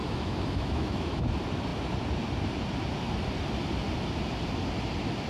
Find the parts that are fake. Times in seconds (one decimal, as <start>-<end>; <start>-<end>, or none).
0.0-1.2